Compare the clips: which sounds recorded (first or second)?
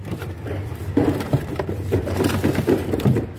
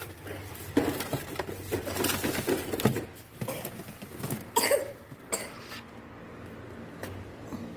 second